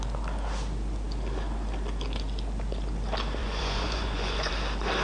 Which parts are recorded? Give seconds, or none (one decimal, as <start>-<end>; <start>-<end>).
0.0-3.4; 4.5-5.0